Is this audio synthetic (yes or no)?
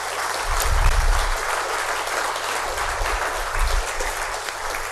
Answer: no